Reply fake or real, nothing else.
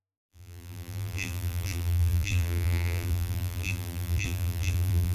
fake